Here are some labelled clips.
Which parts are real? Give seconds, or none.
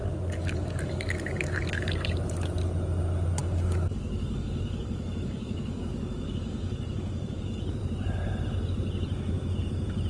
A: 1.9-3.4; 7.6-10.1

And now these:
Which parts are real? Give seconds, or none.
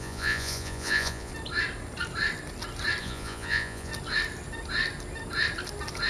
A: 1.3-3.0; 3.9-6.1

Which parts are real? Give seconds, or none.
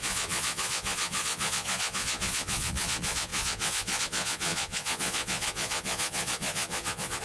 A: none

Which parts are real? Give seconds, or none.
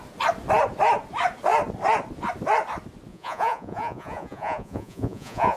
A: 0.0-3.1